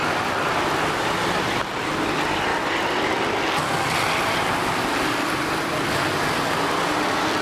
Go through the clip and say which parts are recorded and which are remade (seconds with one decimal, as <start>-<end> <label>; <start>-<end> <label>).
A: 0.0-7.4 recorded

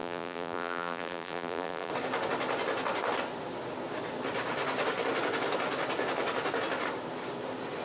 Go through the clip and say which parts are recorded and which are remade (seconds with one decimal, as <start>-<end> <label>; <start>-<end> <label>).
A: 0.0-1.9 remade; 1.9-7.8 recorded

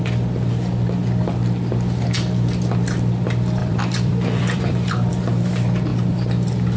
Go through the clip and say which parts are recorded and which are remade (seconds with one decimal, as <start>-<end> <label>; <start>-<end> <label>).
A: 0.0-3.6 recorded; 3.6-5.1 remade; 5.1-6.8 recorded

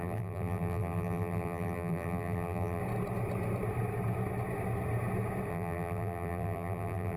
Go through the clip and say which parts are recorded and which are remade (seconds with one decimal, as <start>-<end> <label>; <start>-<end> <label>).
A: 0.0-2.8 remade; 2.8-5.5 recorded; 5.5-7.2 remade

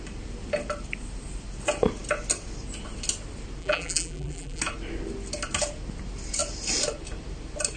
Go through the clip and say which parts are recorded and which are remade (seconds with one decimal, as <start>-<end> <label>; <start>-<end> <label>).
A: 0.0-3.6 recorded; 3.6-4.6 remade; 4.6-7.8 recorded

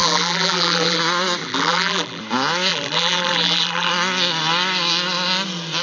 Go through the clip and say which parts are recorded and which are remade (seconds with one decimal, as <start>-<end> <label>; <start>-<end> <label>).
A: 0.0-1.0 remade; 1.0-1.4 recorded; 1.4-2.2 remade; 2.2-2.7 recorded; 2.7-3.9 remade; 3.9-5.8 recorded

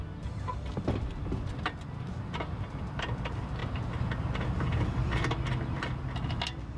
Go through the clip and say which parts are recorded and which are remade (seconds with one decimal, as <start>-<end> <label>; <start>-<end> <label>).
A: 0.0-3.6 remade; 3.6-4.2 recorded; 4.2-6.8 remade